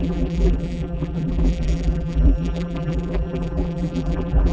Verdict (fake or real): fake